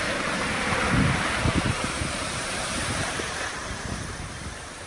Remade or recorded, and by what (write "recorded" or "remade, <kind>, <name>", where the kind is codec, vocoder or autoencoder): remade, vocoder, BigVGAN v2